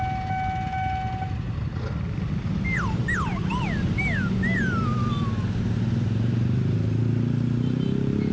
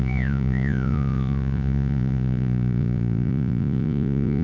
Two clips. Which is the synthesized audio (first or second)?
second